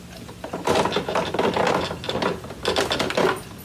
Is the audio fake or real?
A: real